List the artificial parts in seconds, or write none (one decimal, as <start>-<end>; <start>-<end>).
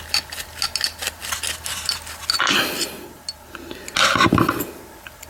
none